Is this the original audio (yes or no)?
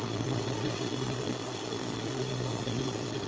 no